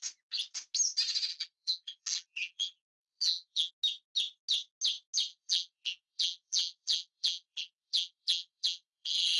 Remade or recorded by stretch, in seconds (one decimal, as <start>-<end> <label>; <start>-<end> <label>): 0.0-1.3 recorded; 1.3-3.7 remade; 3.7-5.3 recorded; 5.3-9.4 remade